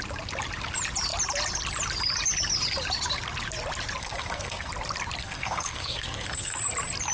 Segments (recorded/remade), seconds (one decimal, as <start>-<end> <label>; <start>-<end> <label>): 0.0-4.0 recorded; 4.0-4.7 remade; 4.7-5.2 recorded; 5.2-6.6 remade; 6.6-7.1 recorded